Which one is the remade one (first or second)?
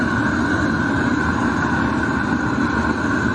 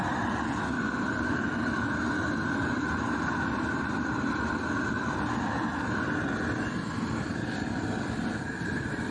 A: second